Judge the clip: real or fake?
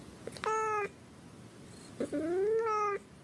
real